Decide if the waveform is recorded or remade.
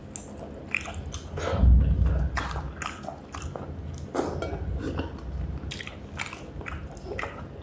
recorded